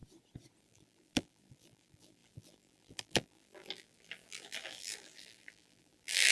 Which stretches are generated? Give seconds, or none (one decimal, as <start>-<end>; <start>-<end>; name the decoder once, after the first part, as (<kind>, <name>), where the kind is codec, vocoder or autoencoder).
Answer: 0.6-6.3 (vocoder, BigVGAN v2)